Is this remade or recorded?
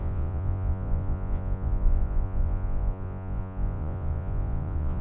remade